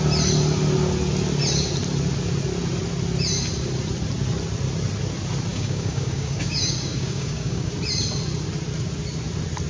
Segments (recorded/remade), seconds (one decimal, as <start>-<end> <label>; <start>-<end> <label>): 0.0-5.5 recorded; 5.5-7.7 remade; 7.7-9.7 recorded